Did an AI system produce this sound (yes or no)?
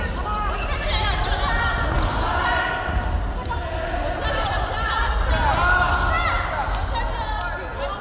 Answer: no